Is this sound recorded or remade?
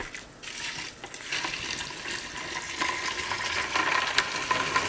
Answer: recorded